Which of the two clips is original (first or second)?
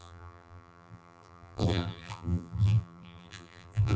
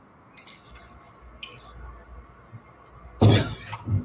second